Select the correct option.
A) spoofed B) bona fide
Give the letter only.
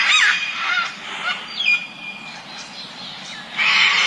A